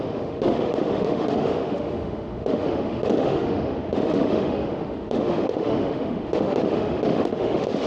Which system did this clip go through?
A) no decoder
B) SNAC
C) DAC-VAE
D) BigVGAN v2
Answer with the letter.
C